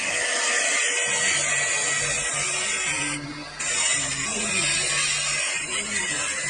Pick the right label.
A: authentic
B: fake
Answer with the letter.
A